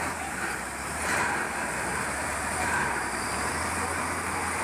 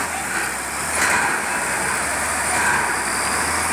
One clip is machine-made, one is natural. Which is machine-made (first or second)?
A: first